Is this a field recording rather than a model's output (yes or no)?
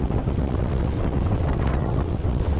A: no